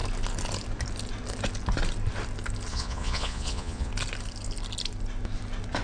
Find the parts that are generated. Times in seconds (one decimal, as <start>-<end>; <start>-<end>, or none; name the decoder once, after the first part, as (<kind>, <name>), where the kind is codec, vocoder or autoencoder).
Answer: 2.7-3.9 (vocoder, Vocos)